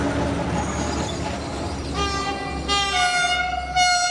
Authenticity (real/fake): real